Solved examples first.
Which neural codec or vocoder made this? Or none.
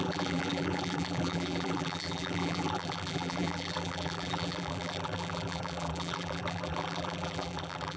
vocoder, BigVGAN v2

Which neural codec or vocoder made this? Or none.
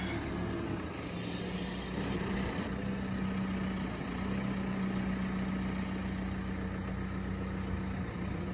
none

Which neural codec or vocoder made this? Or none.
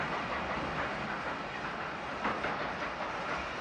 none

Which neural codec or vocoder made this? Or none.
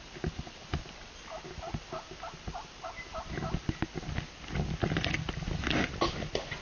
none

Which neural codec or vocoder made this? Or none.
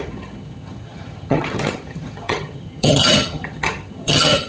vocoder, HiFi-GAN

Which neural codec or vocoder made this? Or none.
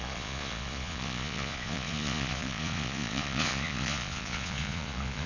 vocoder, Vocos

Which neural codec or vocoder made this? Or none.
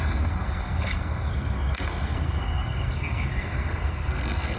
codec, SNAC